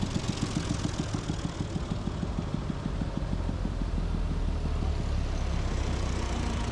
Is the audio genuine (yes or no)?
yes